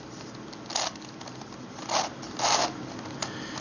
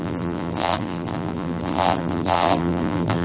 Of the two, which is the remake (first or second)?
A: second